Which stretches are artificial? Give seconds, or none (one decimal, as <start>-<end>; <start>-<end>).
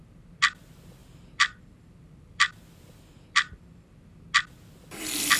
1.0-4.2